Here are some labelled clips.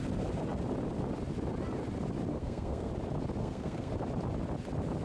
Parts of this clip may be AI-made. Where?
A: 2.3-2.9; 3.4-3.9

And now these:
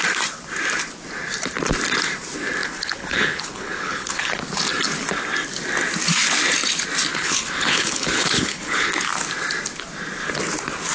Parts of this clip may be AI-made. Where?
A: 2.6-4.4; 7.1-9.1

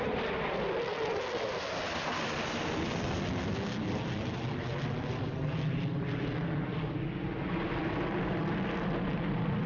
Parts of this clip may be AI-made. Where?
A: none

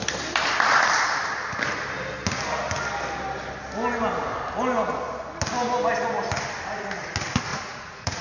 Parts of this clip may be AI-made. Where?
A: 7.5-8.2

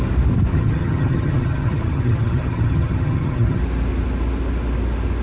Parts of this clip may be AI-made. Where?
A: 0.5-3.6

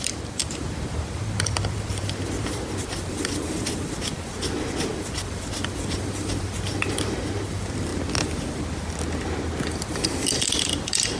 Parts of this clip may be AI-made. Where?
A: 0.0-7.9; 9.9-11.2

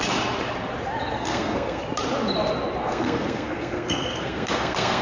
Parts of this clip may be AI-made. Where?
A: 1.1-1.8; 2.8-5.0